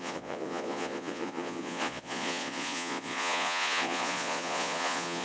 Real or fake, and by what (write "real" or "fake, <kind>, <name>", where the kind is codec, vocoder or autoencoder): fake, vocoder, Vocos